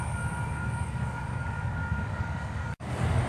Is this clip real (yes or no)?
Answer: no